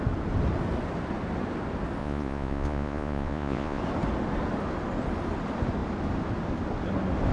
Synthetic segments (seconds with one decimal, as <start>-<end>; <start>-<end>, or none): 2.0-3.8